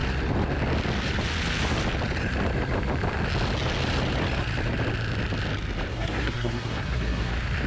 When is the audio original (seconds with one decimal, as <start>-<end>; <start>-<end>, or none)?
0.0-5.9; 7.3-7.7